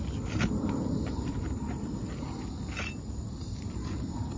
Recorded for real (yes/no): yes